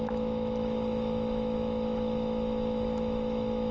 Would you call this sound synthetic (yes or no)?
yes